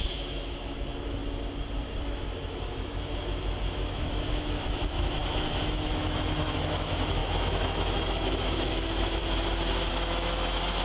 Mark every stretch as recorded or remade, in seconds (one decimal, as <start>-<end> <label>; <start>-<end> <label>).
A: 0.0-1.2 remade; 1.2-2.0 recorded; 2.0-9.2 remade; 9.2-9.9 recorded; 9.9-10.8 remade